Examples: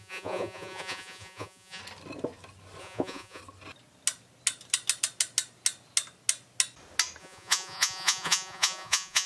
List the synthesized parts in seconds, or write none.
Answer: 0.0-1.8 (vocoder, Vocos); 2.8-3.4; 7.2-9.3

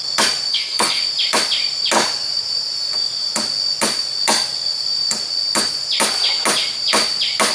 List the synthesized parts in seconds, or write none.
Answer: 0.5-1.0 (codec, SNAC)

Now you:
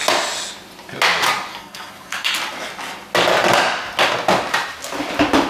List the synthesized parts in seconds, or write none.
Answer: 1.5-2.3 (codec, SNAC)